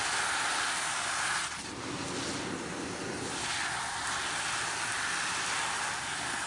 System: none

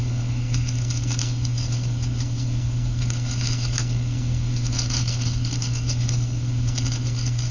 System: codec, SNAC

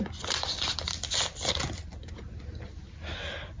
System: none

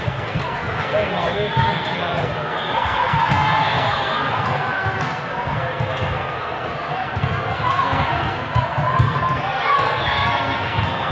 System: codec, SNAC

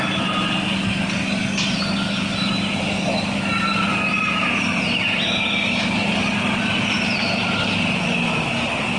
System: none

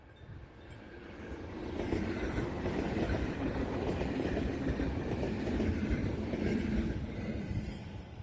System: none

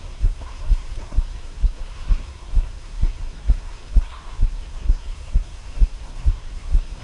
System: codec, SNAC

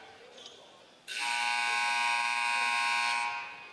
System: none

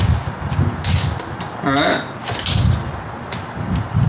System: none